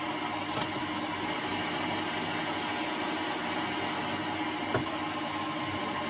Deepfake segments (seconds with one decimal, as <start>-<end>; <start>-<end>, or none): none